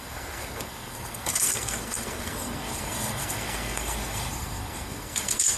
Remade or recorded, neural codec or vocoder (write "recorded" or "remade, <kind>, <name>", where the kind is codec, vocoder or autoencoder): remade, codec, SNAC